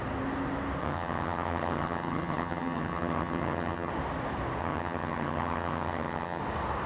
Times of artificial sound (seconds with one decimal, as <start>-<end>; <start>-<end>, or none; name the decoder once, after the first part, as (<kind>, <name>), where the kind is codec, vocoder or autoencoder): 0.8-3.9 (vocoder, HiFi-GAN); 4.6-6.4